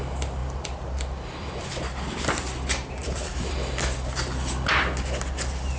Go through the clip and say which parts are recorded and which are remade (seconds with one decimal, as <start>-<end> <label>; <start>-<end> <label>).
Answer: 0.0-0.4 recorded; 0.4-1.7 remade; 1.7-3.0 recorded; 3.0-3.7 remade; 3.7-5.8 recorded